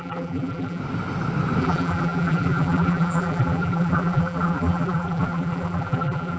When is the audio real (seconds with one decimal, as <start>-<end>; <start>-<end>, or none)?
0.8-1.6